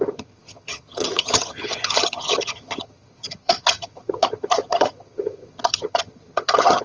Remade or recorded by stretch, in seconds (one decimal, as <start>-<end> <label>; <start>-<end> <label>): 0.0-6.8 remade